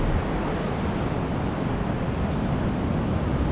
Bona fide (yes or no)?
yes